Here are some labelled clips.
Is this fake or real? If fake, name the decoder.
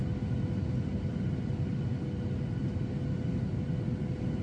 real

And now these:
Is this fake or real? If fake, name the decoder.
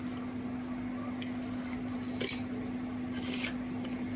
real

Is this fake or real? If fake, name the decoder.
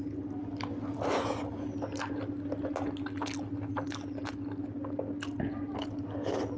real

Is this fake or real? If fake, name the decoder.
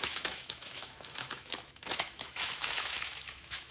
fake, autoencoder, DAC-VAE